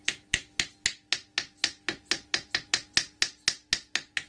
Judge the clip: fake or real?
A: real